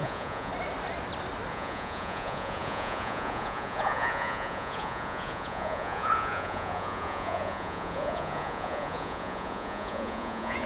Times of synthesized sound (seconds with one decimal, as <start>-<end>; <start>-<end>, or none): 0.0-0.5; 1.5-10.7